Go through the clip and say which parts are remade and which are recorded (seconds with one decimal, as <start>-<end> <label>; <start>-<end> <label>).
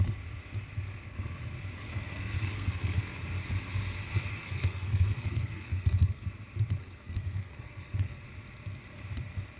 0.0-1.9 recorded; 1.9-3.0 remade; 3.0-4.4 recorded; 4.4-6.3 remade; 6.3-6.8 recorded; 6.8-8.2 remade; 8.2-9.6 recorded